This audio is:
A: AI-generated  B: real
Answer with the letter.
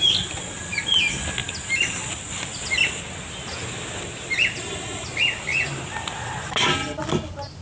B